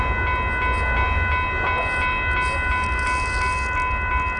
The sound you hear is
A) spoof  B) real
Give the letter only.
B